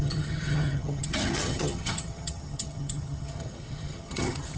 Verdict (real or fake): fake